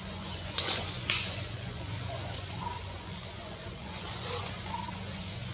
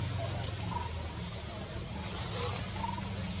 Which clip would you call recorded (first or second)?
second